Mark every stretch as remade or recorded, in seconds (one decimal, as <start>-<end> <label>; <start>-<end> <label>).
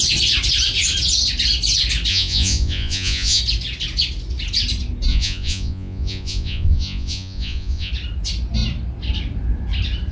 0.0-2.1 recorded; 2.1-3.4 remade; 3.4-5.1 recorded; 5.1-7.9 remade; 7.9-10.1 recorded